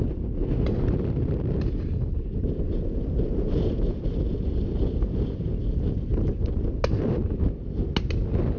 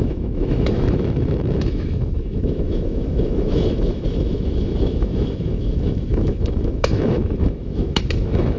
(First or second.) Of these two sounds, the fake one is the second